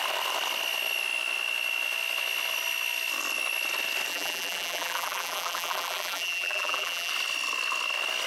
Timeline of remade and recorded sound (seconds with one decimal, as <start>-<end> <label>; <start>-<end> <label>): 0.0-4.1 recorded; 4.1-7.1 remade; 7.1-8.3 recorded